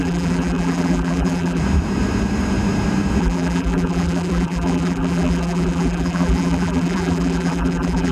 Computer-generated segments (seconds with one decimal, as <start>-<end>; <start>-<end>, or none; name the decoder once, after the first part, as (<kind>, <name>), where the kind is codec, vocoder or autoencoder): 0.0-1.6 (vocoder, BigVGAN v2); 3.2-8.1